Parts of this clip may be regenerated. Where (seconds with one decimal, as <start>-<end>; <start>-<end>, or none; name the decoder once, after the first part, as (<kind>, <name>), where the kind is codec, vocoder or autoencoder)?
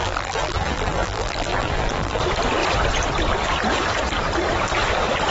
0.0-2.2 (vocoder, BigVGAN v2)